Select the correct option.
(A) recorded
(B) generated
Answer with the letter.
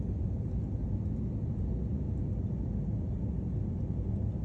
A